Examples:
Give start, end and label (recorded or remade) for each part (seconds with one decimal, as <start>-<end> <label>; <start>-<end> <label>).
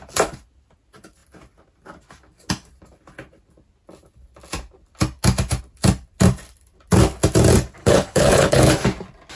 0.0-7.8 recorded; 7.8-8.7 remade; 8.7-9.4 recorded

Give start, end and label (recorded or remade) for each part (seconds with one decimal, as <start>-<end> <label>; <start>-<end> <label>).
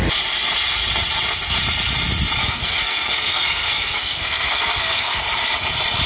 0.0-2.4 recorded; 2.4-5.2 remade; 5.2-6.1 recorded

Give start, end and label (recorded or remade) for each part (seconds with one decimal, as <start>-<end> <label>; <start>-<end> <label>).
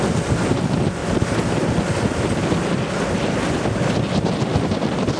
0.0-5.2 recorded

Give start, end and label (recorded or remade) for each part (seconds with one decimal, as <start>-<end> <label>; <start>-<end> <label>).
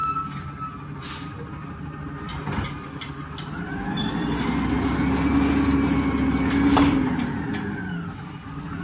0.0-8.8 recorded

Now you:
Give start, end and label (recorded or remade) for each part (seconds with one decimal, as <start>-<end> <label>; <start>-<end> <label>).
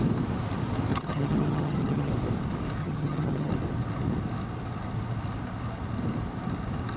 0.0-0.9 recorded; 0.9-2.1 remade; 2.1-2.8 recorded; 2.8-3.5 remade; 3.5-7.0 recorded